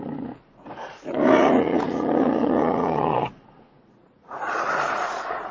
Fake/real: fake